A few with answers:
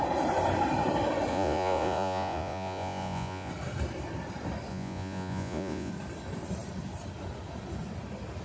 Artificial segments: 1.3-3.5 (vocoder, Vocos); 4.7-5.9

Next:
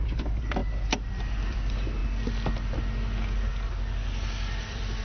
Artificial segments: 0.0-2.0 (vocoder, BigVGAN v2); 4.6-5.0

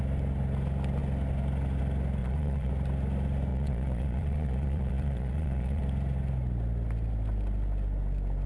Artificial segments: 2.2-2.7 (vocoder, Vocos); 3.5-5.8

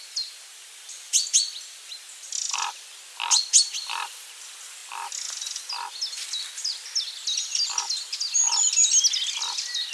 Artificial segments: none

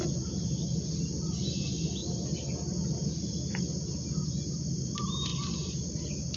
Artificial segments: none

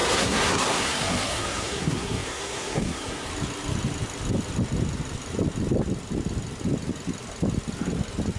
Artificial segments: 0.0-3.3 (codec, SNAC)

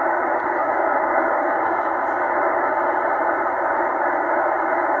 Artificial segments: 0.6-1.9 (codec, DAC)